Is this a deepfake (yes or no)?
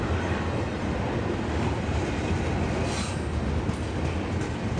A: no